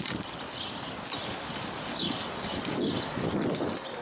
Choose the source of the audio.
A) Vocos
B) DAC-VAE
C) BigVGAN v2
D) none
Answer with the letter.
D